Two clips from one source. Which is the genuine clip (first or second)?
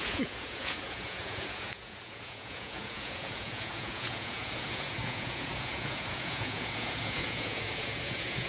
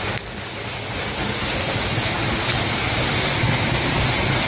second